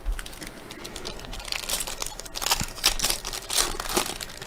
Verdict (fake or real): real